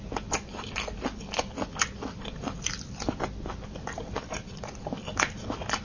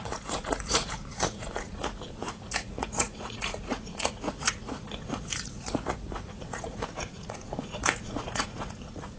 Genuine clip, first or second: first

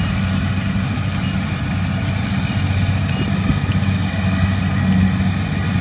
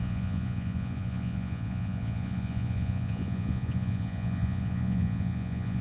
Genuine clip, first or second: first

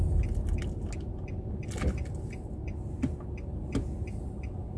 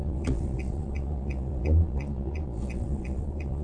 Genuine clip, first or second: first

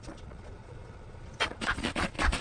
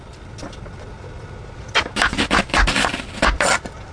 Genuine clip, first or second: second